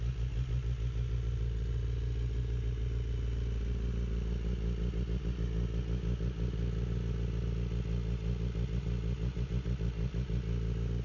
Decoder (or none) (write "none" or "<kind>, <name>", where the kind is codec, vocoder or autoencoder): none